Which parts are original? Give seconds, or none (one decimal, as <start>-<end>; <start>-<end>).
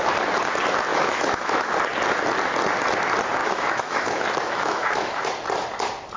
0.0-0.9; 1.7-3.4; 5.3-6.2